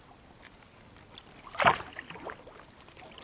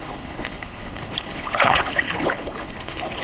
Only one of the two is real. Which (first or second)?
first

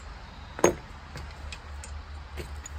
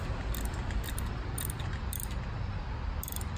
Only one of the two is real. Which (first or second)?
first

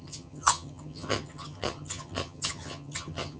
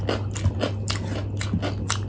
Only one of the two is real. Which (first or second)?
second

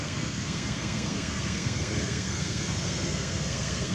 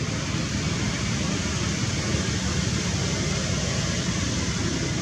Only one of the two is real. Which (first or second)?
second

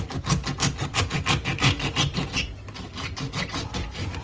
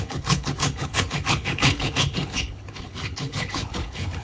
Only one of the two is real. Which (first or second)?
first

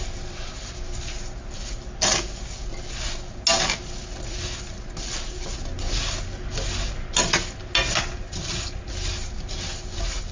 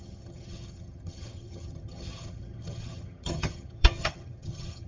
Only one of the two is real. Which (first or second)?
first